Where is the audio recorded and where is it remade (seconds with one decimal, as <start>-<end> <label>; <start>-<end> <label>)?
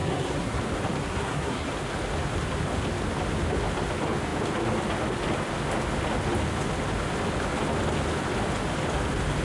0.0-0.6 remade; 0.6-1.0 recorded; 1.0-1.7 remade; 1.7-9.4 recorded